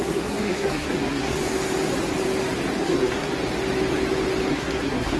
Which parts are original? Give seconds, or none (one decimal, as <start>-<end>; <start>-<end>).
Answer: 1.4-2.8; 3.3-4.5